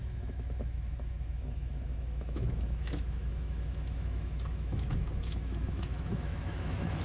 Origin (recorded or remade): remade